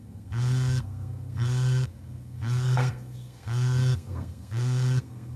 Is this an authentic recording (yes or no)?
no